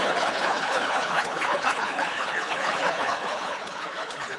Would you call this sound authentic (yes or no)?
no